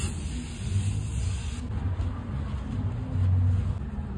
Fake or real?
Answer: real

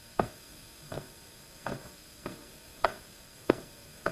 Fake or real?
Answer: fake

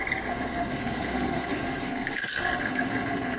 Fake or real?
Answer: fake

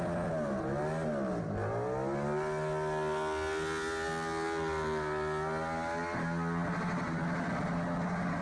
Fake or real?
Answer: real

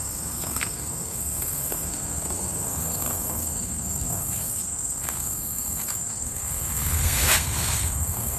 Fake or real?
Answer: fake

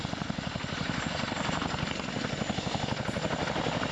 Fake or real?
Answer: real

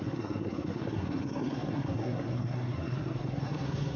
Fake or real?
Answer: fake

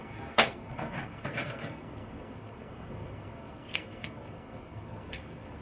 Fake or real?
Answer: fake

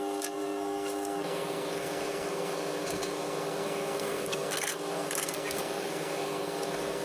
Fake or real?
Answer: fake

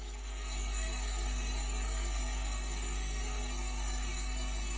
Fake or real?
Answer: fake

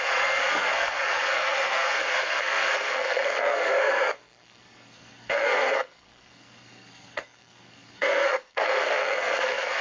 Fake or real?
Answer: fake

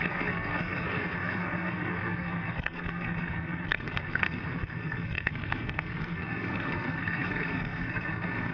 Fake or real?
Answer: fake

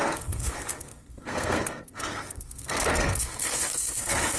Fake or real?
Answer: fake